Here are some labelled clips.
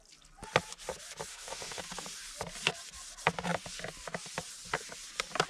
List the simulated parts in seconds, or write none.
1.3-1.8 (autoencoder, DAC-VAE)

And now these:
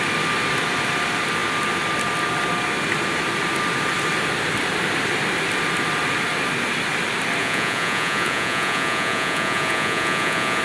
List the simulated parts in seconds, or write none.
7.4-10.6 (vocoder, Vocos)